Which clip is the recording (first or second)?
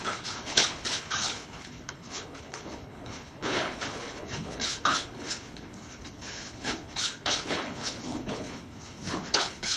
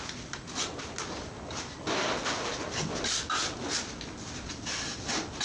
second